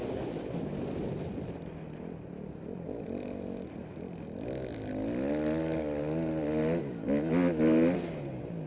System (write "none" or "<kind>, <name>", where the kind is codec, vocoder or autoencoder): none